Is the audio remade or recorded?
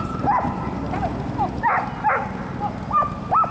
recorded